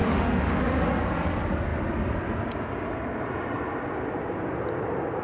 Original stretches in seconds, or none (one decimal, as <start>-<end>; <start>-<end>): 0.6-5.2